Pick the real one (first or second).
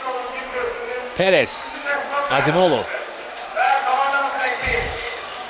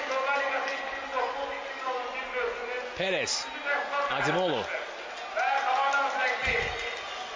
second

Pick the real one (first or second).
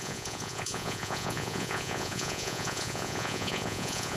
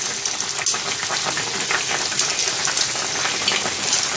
second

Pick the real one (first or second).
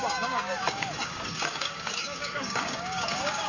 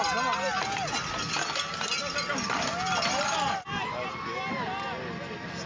second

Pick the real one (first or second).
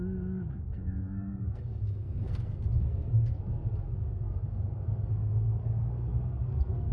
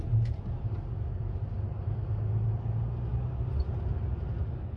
second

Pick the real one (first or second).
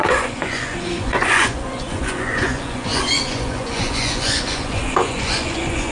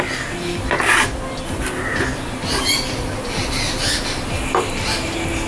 second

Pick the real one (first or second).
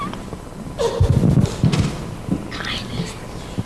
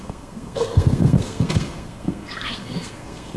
first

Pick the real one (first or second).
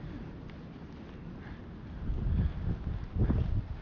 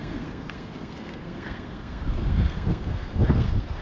first